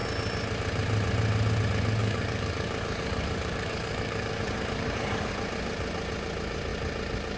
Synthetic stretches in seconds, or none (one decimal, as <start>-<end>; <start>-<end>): 2.0-5.3